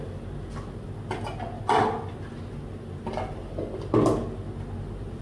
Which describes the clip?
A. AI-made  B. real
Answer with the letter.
B